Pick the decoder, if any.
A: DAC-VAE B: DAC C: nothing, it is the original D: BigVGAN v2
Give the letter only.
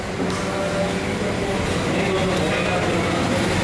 C